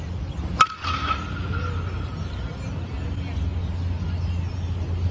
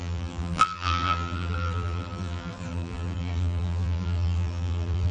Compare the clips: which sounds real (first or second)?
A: first